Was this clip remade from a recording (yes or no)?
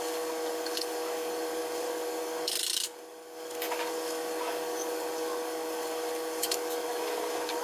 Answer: yes